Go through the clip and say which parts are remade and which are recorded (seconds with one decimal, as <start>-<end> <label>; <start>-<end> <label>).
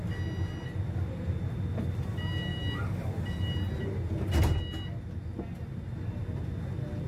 0.0-7.1 recorded